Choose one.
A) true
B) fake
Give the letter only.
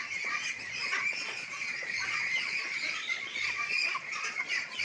B